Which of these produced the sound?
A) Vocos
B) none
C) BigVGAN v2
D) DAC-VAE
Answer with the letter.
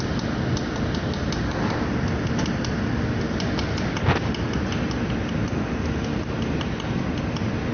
B